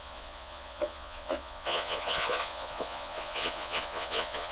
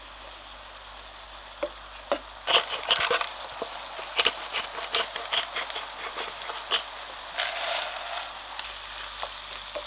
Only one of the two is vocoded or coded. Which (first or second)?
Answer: first